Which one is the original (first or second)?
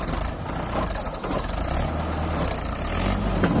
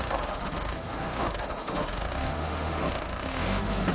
first